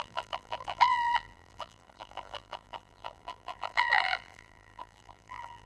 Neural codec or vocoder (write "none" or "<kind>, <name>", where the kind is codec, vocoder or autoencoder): vocoder, BigVGAN v2